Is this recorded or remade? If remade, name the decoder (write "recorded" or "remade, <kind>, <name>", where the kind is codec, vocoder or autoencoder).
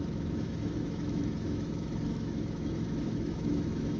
remade, autoencoder, DAC-VAE